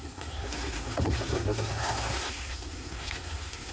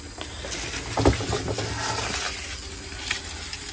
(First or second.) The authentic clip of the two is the second